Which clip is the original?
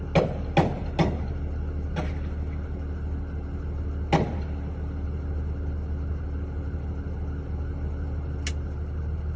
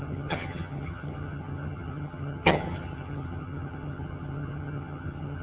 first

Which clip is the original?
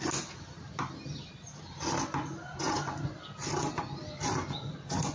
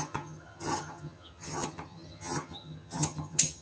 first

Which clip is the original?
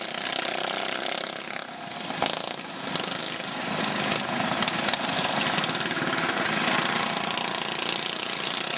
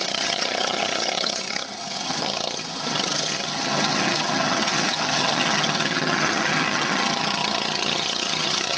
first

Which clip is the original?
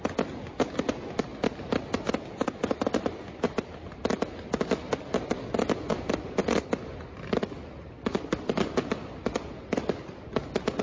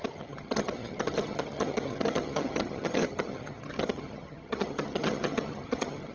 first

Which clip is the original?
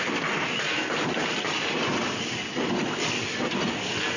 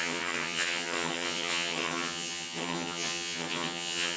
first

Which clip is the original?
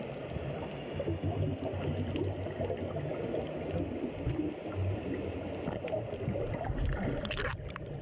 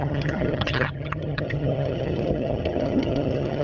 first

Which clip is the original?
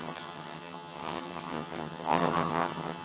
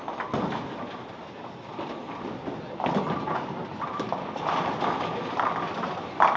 second